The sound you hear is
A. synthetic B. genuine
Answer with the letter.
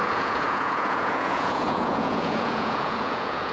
A